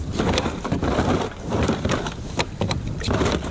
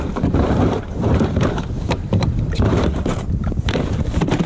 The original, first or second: first